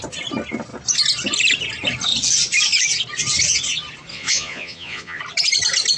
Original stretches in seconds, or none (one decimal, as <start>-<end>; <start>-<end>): 0.0-4.1; 5.2-6.0